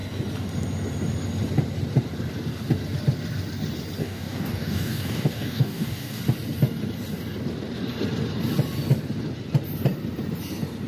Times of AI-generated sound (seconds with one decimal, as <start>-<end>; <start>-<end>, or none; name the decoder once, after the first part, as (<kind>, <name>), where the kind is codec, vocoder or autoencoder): 4.0-6.2 (codec, DAC)